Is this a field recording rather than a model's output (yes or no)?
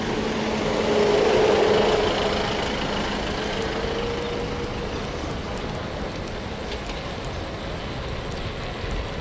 yes